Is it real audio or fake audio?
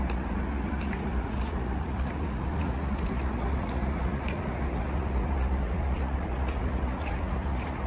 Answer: fake